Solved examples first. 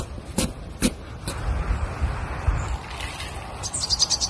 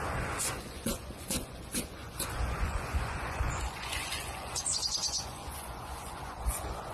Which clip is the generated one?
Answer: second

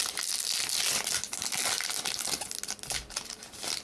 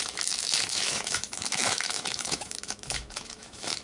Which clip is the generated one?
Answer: second